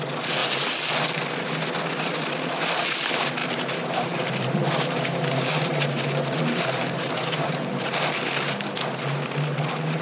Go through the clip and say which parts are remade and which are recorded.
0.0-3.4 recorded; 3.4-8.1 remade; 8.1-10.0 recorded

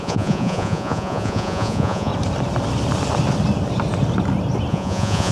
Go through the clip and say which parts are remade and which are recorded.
0.0-2.1 remade; 2.1-4.7 recorded; 4.7-5.3 remade

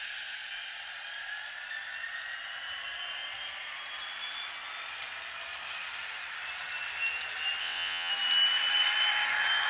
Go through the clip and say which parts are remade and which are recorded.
0.0-7.6 recorded; 7.6-8.1 remade; 8.1-9.7 recorded